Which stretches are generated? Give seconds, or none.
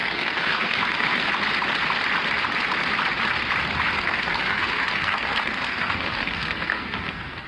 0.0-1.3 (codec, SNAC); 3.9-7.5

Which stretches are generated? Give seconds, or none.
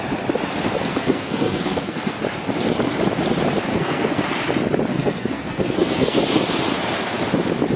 0.9-2.2 (codec, SNAC); 3.7-4.2; 4.9-6.2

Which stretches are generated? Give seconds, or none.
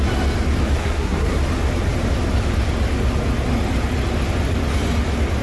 0.8-1.4 (codec, SNAC)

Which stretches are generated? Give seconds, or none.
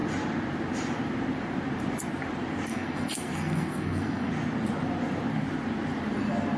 2.7-4.3 (codec, SNAC)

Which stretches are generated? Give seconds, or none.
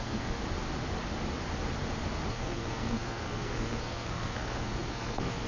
0.0-0.4 (codec, SNAC); 2.3-5.5